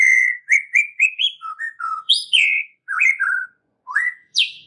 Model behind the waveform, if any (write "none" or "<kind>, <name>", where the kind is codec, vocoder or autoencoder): vocoder, Vocos